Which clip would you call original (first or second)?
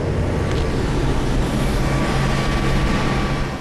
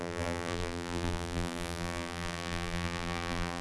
first